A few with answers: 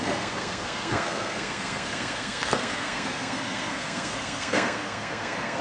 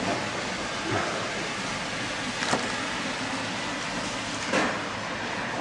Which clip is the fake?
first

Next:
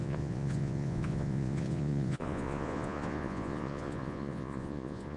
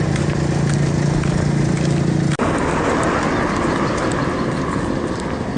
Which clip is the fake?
first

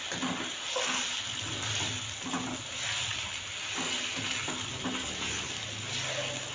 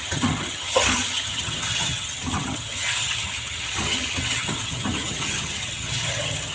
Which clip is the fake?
second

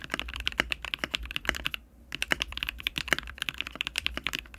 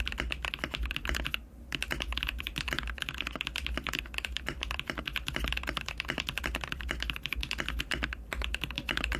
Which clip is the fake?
first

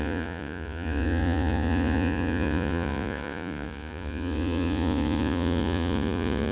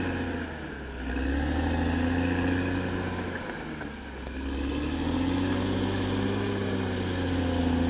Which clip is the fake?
first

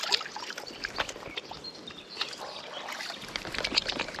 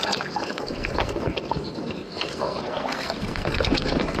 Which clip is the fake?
second